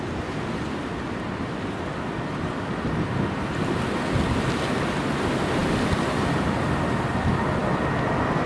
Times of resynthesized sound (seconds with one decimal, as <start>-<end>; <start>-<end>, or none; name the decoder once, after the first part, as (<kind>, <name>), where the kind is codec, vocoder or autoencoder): none